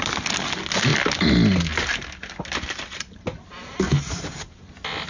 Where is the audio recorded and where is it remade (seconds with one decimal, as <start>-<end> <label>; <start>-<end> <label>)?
0.0-5.1 recorded